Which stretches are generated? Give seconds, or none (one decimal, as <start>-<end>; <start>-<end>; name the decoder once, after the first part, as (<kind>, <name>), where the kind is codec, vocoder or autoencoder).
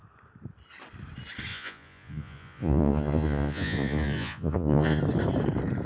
1.5-5.0 (vocoder, Vocos)